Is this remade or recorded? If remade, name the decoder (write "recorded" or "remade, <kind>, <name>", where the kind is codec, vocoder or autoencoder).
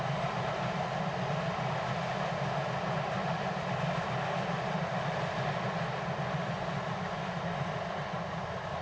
recorded